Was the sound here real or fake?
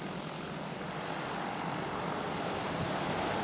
real